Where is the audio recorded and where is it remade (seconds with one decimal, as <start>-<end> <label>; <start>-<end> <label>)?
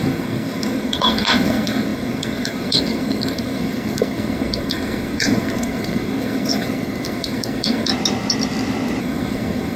0.0-7.9 remade; 7.9-9.0 recorded; 9.0-9.8 remade